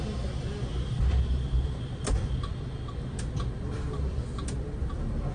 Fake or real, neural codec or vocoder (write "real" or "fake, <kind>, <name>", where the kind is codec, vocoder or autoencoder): real